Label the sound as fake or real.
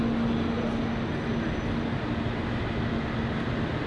real